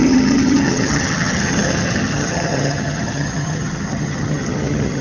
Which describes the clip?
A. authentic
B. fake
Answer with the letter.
B